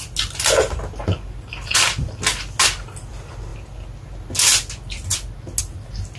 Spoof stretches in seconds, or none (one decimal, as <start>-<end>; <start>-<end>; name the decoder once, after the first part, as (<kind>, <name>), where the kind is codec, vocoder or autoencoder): none